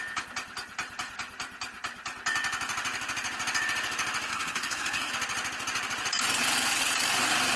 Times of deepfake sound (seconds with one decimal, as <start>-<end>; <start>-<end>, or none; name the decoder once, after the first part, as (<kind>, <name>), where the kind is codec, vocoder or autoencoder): 4.3-5.1 (codec, SNAC)